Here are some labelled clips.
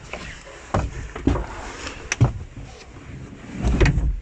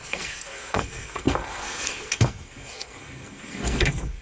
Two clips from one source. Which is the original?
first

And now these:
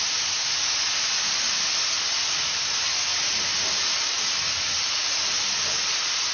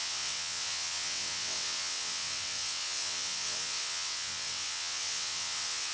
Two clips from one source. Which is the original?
first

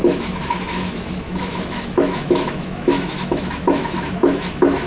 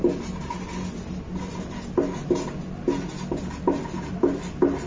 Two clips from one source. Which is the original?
second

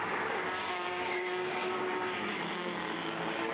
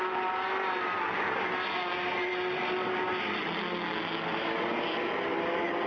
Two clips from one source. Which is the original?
second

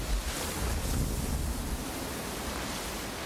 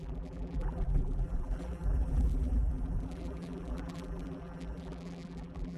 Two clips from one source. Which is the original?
first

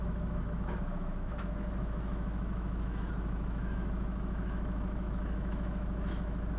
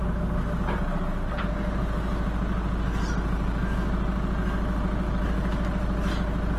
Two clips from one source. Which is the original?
second